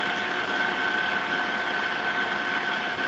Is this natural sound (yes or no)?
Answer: no